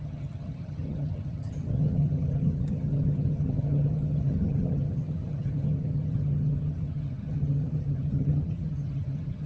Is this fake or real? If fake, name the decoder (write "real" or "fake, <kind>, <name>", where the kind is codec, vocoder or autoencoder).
fake, vocoder, HiFi-GAN